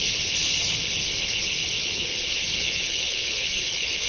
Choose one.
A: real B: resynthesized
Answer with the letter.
B